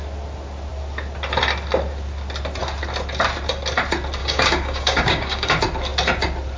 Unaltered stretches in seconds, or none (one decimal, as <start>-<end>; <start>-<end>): 0.0-4.2; 5.5-6.6